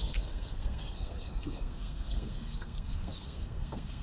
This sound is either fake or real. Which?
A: fake